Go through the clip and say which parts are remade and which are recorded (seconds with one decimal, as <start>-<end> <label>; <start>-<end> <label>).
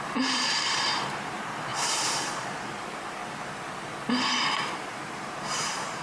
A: 0.0-3.2 remade; 3.2-5.1 recorded; 5.1-6.0 remade